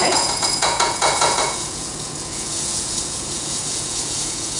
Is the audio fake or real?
fake